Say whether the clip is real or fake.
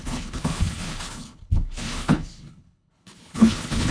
fake